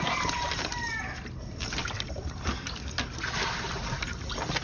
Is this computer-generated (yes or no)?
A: no